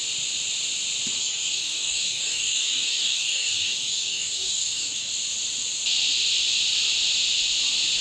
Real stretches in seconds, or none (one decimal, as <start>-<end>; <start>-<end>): 0.0-1.2; 5.1-8.0